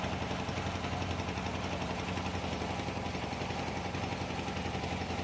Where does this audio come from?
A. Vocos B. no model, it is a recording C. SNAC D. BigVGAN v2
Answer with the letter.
B